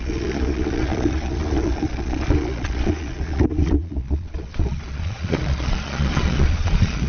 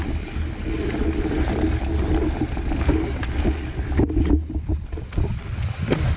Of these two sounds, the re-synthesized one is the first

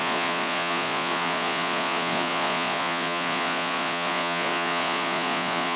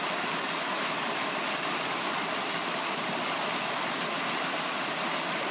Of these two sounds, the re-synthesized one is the first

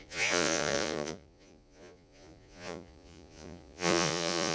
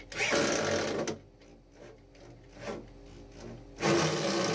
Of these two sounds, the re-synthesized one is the first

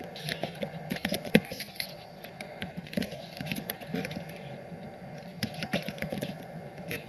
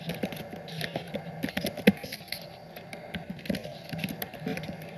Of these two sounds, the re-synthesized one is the first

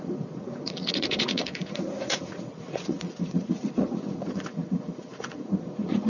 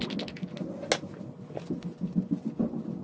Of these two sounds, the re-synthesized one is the first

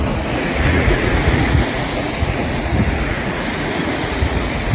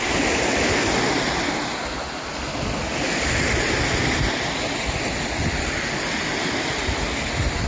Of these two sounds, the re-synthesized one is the first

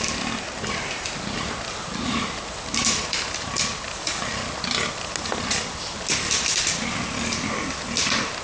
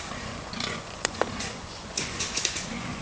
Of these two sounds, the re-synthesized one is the second